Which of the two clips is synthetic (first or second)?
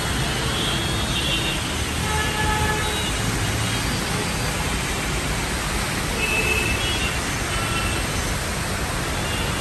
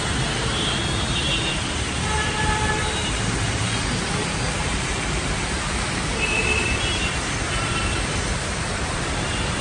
second